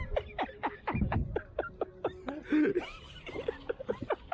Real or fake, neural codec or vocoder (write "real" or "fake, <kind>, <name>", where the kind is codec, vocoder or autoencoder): real